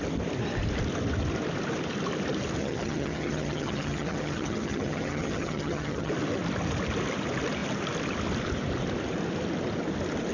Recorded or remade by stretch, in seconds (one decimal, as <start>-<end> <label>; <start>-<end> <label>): 0.0-2.6 recorded; 2.6-6.1 remade; 6.1-10.3 recorded